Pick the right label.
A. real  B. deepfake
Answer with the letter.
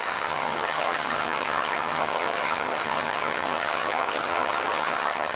B